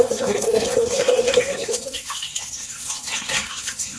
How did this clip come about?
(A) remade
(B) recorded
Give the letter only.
A